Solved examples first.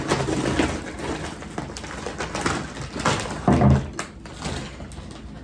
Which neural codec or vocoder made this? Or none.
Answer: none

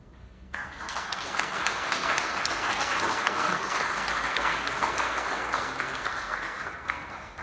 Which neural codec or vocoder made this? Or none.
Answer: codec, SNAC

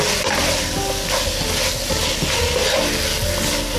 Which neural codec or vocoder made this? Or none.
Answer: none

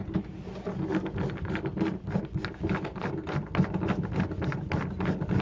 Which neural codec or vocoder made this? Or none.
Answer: none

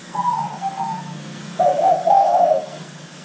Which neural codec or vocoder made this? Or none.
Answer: codec, SNAC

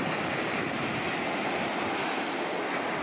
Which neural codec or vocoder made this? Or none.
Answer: none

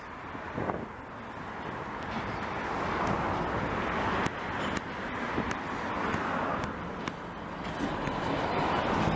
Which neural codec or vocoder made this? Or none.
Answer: none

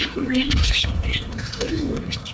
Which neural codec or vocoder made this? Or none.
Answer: codec, SNAC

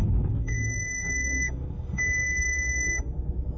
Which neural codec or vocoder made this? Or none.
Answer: codec, SNAC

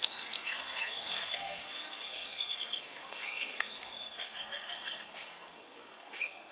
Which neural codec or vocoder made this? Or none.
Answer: codec, SNAC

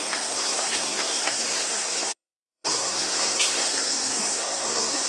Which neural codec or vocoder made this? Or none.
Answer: codec, SNAC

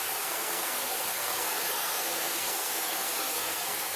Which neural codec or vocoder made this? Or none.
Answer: codec, SNAC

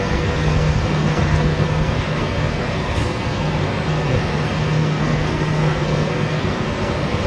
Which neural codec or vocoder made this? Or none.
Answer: codec, SNAC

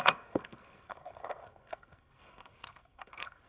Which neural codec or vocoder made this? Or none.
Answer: codec, SNAC